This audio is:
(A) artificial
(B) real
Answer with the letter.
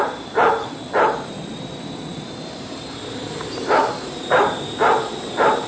A